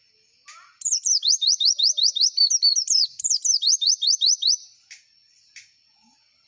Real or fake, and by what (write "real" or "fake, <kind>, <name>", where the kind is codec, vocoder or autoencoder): real